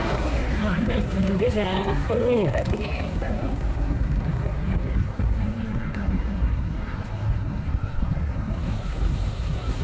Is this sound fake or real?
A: fake